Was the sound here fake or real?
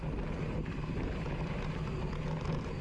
real